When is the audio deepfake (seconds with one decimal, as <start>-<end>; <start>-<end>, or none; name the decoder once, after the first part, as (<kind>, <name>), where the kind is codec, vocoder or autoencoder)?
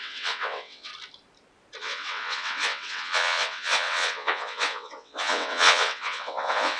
0.0-0.9 (vocoder, WaveNeXt); 1.8-6.8